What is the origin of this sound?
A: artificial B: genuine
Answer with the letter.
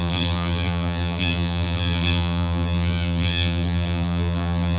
A